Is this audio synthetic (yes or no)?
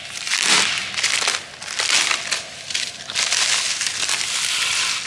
no